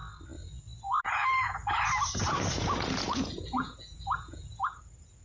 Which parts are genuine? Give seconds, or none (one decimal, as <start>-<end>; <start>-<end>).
0.0-1.0; 1.6-2.5